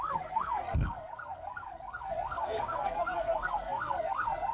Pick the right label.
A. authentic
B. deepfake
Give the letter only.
B